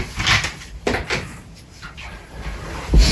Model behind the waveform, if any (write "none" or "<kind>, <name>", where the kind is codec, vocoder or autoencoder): none